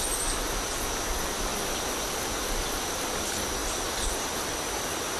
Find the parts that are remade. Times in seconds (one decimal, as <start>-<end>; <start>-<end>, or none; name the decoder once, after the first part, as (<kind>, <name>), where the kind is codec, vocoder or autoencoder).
none